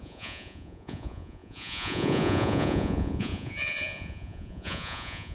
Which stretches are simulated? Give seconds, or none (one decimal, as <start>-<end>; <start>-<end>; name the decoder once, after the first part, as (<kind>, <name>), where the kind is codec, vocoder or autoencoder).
0.0-5.3 (vocoder, Vocos)